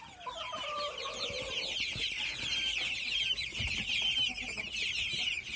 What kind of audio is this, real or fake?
real